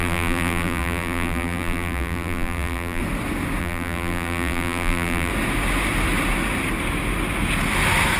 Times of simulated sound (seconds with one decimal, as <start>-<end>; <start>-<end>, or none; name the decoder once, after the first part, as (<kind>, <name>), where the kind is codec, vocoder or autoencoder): 0.0-3.0 (vocoder, BigVGAN v2); 3.6-5.3